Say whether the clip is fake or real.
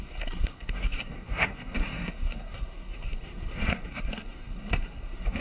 fake